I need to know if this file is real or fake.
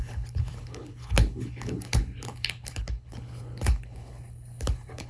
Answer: fake